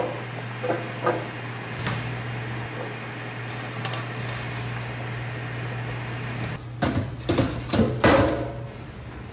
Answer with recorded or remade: recorded